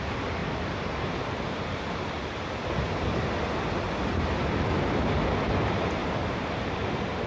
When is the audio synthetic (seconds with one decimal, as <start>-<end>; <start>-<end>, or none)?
0.4-1.8; 6.0-6.7